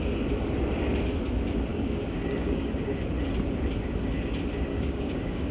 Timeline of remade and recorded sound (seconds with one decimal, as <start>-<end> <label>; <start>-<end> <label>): 0.0-1.7 recorded; 1.7-2.7 remade; 2.7-4.7 recorded; 4.7-5.5 remade